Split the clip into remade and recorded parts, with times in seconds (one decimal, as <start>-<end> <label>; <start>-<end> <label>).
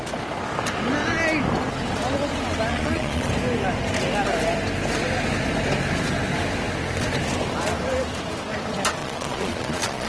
0.0-2.7 recorded; 2.7-3.3 remade; 3.3-9.0 recorded; 9.0-10.1 remade